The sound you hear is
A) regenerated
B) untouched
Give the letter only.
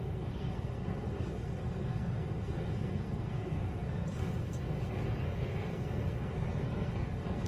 A